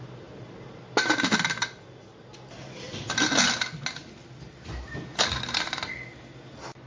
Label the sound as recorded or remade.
recorded